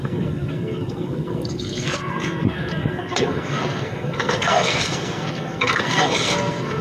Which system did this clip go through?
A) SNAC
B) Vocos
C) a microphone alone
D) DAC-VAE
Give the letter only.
A